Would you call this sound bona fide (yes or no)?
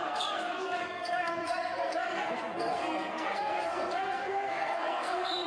no